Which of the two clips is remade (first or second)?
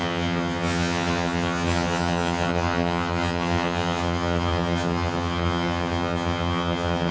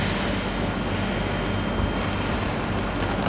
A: first